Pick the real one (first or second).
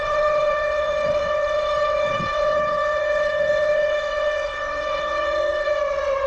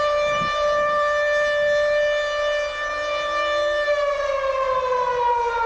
second